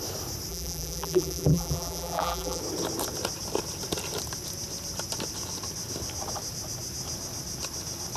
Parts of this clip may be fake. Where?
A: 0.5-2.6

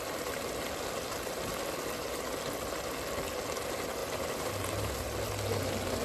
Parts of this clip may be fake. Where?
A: 4.0-4.5